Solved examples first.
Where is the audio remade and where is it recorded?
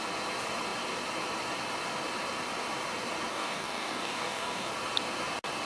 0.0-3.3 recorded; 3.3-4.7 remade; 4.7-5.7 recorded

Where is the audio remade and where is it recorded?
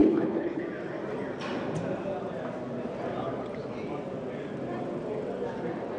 0.0-0.6 remade; 0.6-6.0 recorded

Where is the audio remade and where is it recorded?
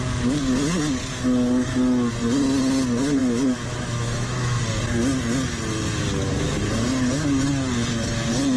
0.0-3.2 recorded; 3.2-4.6 remade; 4.6-8.6 recorded